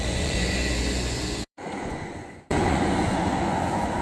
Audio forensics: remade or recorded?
remade